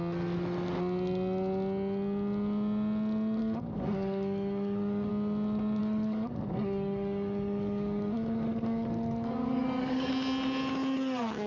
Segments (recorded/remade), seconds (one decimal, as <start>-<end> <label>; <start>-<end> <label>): 0.0-3.4 recorded; 3.4-5.1 remade; 5.1-5.8 recorded; 5.8-10.1 remade; 10.1-11.5 recorded